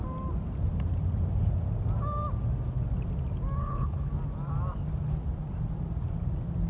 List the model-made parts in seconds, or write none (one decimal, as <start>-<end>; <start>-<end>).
3.6-4.1